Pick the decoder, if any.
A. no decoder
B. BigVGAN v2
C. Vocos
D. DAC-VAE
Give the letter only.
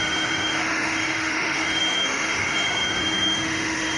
D